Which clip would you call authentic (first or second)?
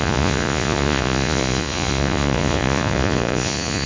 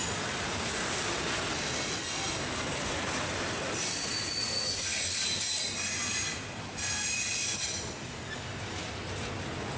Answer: second